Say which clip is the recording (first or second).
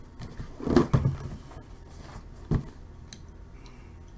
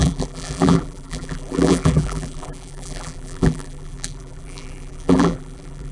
first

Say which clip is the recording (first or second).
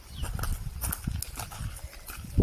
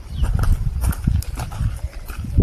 first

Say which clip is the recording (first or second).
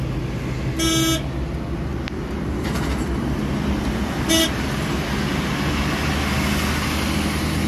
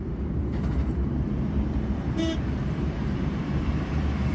first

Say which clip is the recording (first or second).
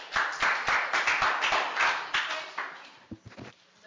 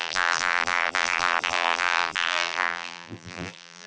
first